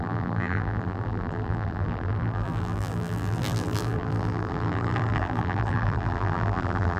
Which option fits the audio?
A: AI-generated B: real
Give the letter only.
A